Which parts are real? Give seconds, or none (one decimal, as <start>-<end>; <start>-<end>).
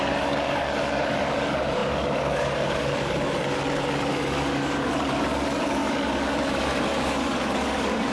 none